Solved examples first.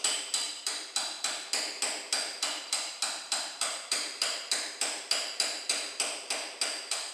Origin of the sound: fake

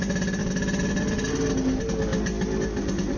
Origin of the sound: real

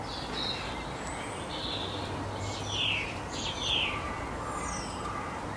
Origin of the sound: real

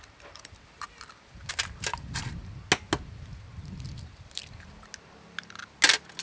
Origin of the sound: real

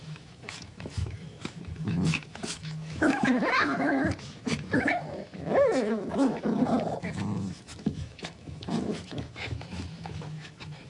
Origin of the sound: fake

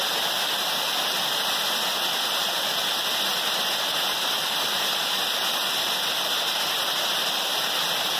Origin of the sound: real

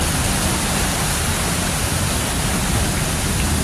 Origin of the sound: real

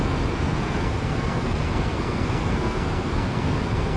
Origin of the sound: fake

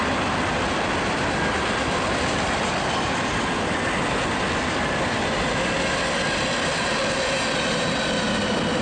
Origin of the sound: real